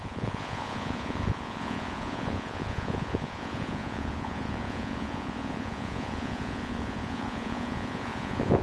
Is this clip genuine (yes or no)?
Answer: no